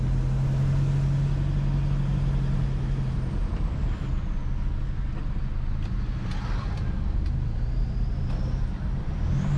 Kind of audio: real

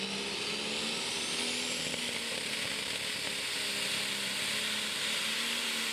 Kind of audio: real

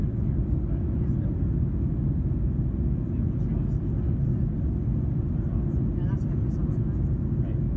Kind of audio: real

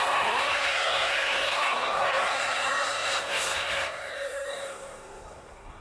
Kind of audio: fake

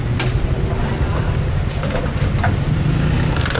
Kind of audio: real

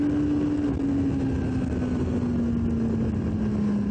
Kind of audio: real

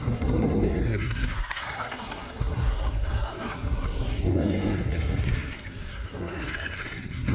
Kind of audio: fake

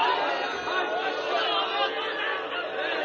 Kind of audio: real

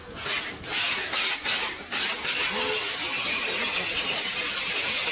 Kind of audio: real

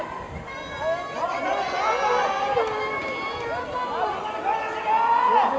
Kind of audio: real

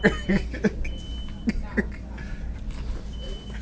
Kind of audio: real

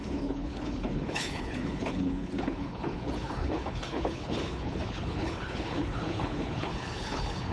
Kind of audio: fake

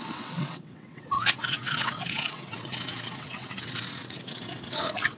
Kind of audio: fake